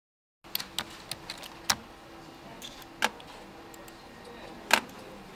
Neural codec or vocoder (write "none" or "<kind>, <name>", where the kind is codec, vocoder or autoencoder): none